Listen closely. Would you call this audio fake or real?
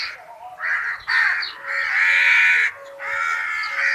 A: real